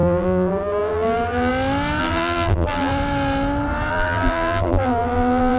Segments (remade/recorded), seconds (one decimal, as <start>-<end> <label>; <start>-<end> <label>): 0.0-1.5 remade; 1.5-2.0 recorded; 2.0-2.9 remade; 2.9-3.9 recorded; 3.9-5.6 remade